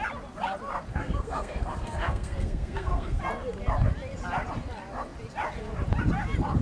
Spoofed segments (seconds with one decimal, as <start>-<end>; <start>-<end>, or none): 0.9-3.2